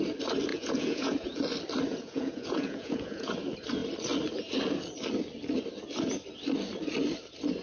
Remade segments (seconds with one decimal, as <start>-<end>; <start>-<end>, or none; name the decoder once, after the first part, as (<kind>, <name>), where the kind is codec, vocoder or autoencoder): 0.5-1.4 (vocoder, Vocos); 1.9-3.3